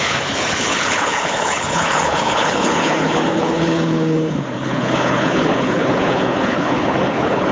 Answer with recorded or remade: remade